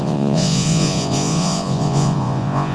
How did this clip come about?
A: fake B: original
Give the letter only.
A